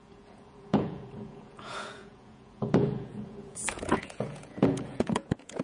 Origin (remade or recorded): remade